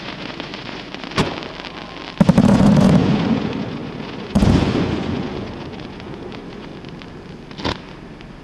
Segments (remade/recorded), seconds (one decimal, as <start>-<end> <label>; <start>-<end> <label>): 0.0-1.3 remade; 1.3-2.4 recorded; 2.4-6.7 remade; 6.7-8.4 recorded